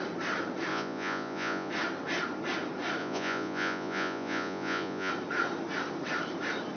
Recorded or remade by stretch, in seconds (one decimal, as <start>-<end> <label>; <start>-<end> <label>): 0.0-0.7 recorded; 0.7-1.7 remade; 1.7-3.0 recorded; 3.0-5.1 remade; 5.1-6.8 recorded